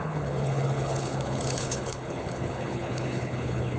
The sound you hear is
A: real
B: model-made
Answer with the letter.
B